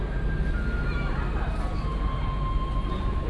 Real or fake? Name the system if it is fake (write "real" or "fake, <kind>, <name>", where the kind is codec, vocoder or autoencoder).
real